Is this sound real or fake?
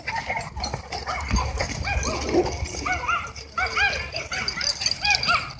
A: real